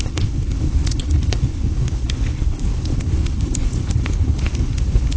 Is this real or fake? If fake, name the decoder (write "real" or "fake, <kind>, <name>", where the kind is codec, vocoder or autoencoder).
fake, codec, HILCodec